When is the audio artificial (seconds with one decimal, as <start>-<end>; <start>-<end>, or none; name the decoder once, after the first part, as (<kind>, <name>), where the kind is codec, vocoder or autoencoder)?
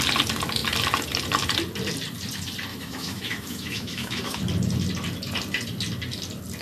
2.7-4.4 (autoencoder, DAC-VAE)